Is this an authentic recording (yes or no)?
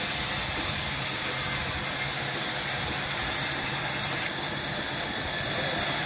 yes